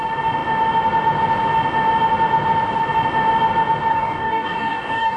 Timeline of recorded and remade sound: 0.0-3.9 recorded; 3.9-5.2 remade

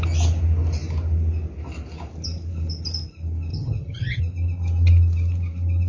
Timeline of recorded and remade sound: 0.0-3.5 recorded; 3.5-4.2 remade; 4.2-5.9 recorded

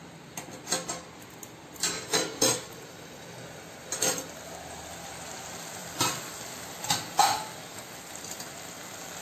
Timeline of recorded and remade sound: 0.0-9.2 recorded